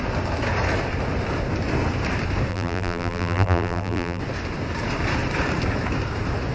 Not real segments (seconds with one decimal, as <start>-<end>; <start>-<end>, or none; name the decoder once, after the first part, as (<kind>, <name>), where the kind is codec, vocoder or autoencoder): 2.5-4.2 (vocoder, BigVGAN v2)